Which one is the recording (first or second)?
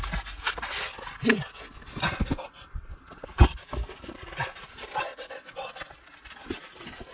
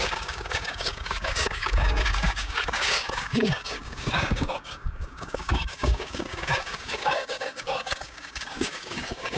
first